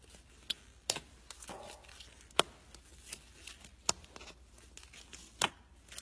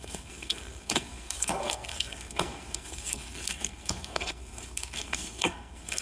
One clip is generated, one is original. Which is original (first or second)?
first